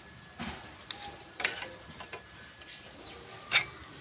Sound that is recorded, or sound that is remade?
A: recorded